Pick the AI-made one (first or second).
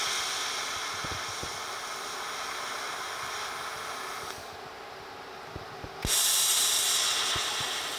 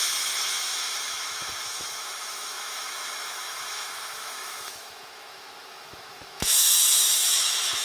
second